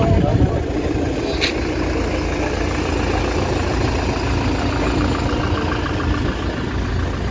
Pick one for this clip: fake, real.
real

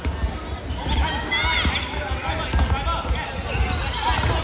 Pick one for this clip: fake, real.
real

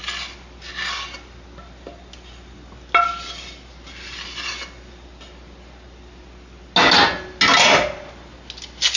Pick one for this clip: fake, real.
real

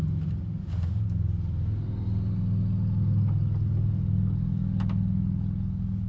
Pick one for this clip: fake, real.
real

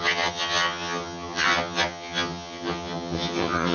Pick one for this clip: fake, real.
fake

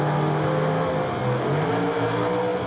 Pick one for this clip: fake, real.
real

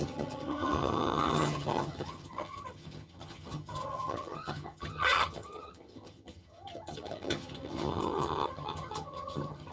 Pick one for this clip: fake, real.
fake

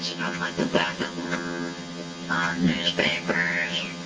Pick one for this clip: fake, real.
fake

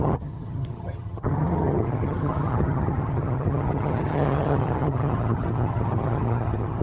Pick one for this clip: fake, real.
fake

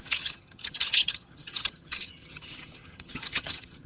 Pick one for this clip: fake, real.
fake